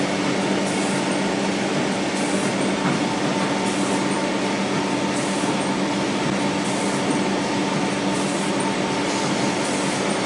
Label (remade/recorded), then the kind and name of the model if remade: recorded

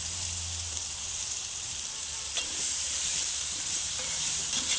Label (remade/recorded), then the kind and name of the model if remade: remade, vocoder, BigVGAN v2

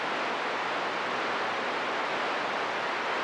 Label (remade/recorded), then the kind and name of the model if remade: recorded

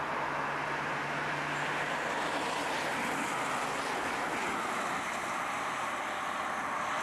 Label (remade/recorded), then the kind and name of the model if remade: recorded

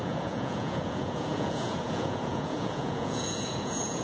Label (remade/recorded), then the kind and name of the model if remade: remade, vocoder, Vocos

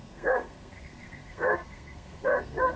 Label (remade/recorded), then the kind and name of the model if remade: remade, codec, SNAC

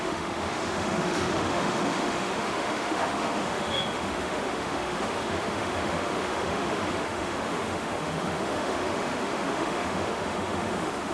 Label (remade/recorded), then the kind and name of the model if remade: remade, autoencoder, DAC-VAE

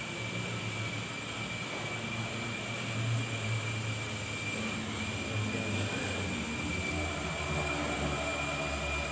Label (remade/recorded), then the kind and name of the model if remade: recorded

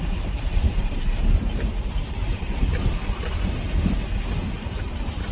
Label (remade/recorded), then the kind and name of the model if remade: remade, vocoder, BigVGAN v2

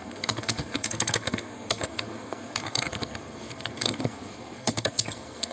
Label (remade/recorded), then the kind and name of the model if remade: remade, codec, SNAC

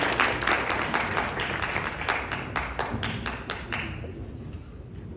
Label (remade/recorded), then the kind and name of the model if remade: recorded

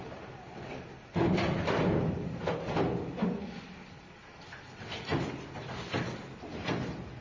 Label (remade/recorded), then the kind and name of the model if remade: recorded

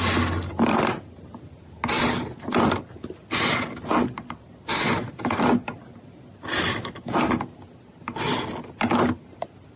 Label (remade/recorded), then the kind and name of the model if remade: recorded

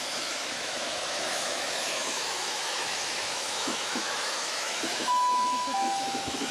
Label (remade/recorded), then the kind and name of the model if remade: remade, autoencoder, DAC-VAE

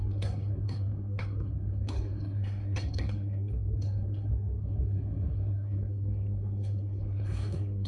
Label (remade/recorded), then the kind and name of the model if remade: remade, codec, SNAC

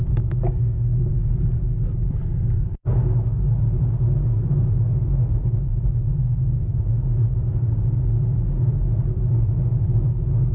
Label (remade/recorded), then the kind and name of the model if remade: remade, codec, DAC